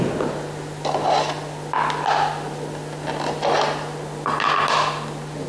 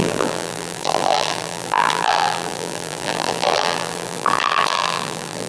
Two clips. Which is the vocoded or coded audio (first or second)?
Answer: second